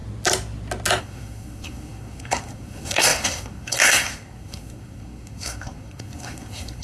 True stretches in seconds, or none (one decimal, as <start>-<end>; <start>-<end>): 0.0-1.0

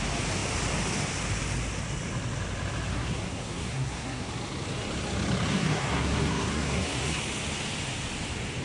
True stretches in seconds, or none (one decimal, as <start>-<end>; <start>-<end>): 0.0-2.9; 4.3-5.5; 7.2-8.6

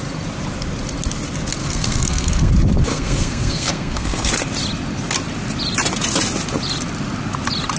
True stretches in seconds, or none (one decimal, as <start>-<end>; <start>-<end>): 0.0-1.6; 2.5-2.9; 4.3-7.8